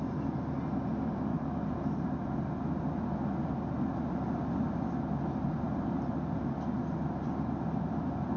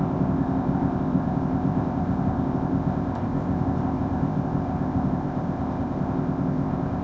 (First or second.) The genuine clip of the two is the first